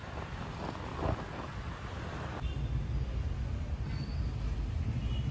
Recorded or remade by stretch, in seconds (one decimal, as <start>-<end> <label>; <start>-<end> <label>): 0.0-5.3 recorded